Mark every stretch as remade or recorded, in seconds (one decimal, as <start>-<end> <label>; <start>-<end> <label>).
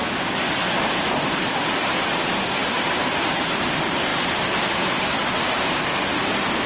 0.0-6.7 remade